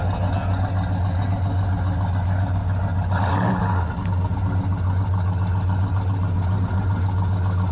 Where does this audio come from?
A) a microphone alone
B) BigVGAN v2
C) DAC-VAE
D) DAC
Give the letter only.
A